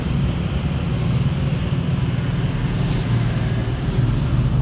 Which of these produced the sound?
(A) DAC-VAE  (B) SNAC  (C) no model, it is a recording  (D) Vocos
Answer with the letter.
C